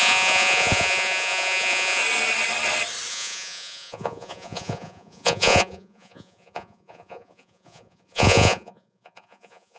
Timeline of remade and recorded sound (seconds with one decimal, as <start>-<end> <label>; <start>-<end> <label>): 0.0-2.0 remade; 2.0-3.1 recorded; 3.1-9.8 remade